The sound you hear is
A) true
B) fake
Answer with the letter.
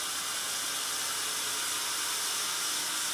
A